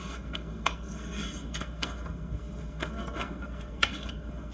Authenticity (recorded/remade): remade